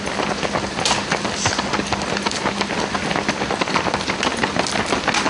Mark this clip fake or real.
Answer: real